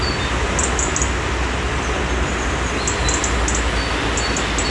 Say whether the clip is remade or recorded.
recorded